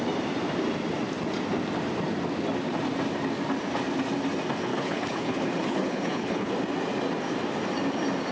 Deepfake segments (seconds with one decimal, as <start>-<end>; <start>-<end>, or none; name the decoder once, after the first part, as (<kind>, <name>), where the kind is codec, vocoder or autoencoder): 4.7-6.5 (codec, HILCodec)